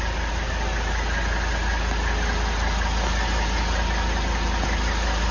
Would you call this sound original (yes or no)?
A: yes